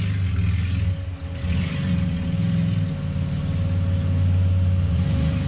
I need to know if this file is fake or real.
real